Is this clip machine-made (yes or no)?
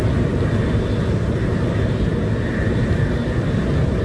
no